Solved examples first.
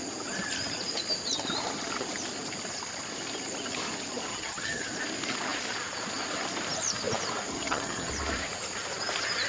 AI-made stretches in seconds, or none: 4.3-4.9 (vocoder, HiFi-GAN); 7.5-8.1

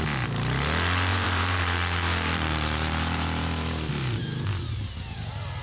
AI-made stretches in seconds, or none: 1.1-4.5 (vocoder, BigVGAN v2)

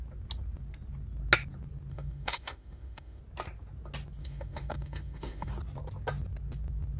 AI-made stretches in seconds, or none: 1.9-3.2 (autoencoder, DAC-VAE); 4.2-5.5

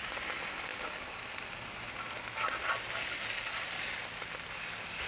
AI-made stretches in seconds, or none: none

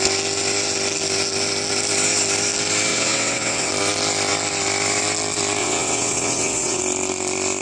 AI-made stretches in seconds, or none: 2.9-3.7 (vocoder, WaveNeXt); 5.6-6.8